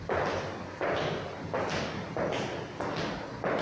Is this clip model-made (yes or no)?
no